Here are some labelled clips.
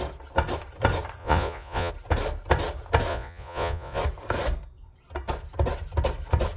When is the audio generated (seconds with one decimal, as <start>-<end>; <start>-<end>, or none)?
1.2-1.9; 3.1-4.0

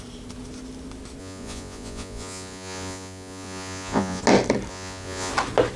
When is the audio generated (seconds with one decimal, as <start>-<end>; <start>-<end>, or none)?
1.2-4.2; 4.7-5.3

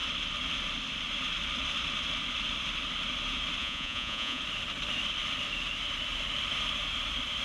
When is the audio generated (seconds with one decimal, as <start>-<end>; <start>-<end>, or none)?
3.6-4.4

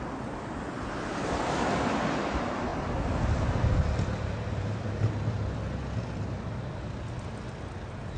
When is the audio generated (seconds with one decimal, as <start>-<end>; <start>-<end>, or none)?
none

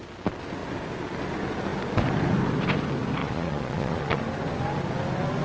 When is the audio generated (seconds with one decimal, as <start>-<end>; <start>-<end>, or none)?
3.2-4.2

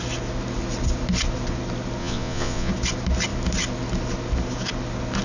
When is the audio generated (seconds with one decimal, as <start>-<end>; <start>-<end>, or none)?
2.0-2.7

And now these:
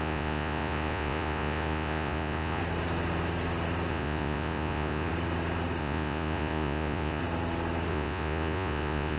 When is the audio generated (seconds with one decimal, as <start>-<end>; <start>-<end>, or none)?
0.0-2.6; 3.9-5.1; 5.8-7.2; 7.9-9.2

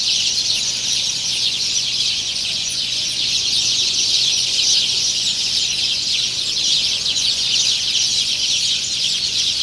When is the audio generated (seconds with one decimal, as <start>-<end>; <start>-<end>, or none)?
0.0-9.6